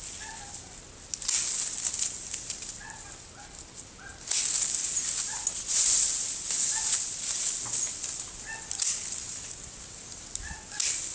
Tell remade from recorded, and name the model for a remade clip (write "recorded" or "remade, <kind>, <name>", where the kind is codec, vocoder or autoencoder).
recorded